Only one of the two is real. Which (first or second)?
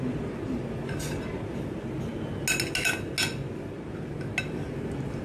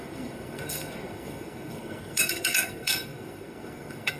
first